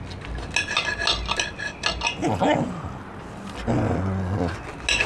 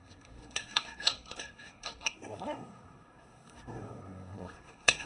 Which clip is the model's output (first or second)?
second